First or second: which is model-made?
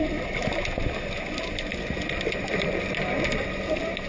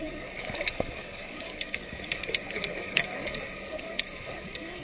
second